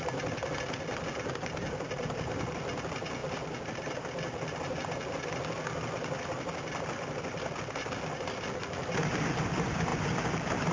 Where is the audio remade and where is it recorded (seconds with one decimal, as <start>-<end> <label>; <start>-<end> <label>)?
0.0-10.7 recorded